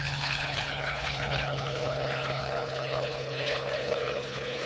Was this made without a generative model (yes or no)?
no